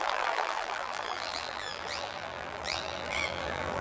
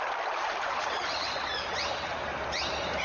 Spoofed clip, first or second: first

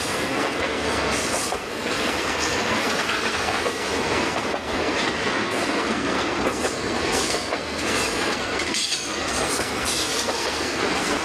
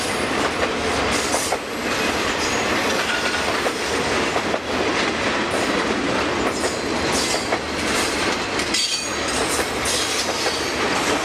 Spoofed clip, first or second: first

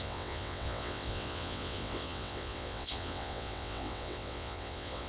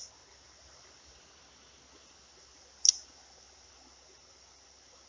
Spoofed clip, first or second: first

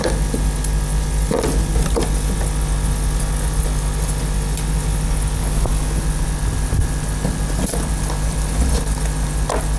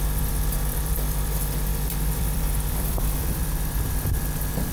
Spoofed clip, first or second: second